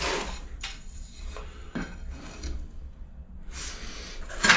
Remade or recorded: recorded